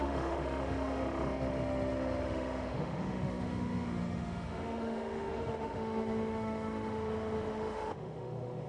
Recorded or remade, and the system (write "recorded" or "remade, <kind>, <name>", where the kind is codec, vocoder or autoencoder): remade, autoencoder, DAC-VAE